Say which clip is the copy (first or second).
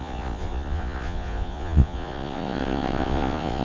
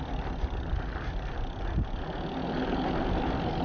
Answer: first